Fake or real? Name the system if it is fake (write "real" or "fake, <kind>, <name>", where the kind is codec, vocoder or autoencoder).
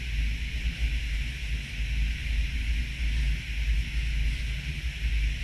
real